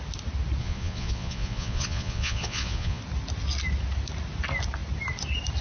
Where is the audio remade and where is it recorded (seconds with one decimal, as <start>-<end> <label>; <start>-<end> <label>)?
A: 0.0-0.6 recorded; 0.6-3.0 remade; 3.0-5.6 recorded